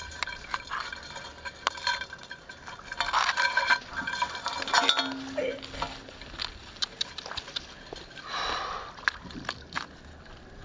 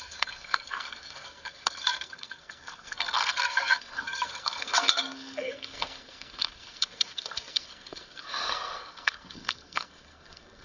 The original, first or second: first